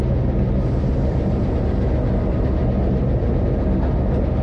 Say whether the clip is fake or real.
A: real